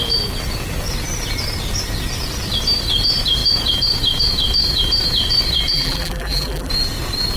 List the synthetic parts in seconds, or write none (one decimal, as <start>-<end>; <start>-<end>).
5.7-6.7